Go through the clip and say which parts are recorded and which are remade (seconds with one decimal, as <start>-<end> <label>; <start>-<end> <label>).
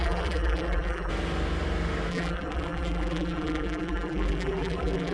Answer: 0.0-1.1 remade; 1.1-2.1 recorded; 2.1-5.1 remade